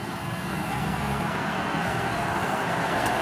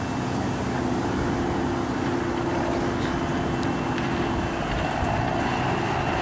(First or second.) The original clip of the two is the second